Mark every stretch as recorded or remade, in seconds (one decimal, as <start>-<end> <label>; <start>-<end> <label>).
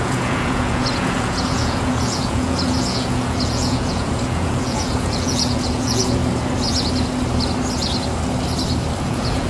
0.0-6.2 remade; 6.2-9.0 recorded; 9.0-9.5 remade